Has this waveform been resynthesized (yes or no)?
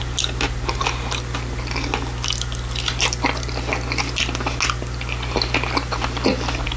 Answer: no